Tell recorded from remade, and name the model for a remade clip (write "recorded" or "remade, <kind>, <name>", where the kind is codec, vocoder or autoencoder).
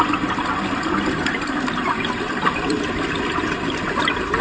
recorded